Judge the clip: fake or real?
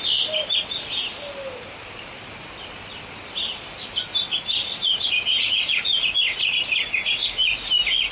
real